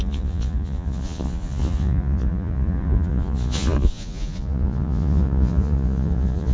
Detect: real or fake fake